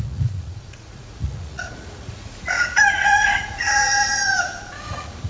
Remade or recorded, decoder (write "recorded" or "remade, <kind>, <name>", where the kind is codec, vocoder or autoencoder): remade, vocoder, Vocos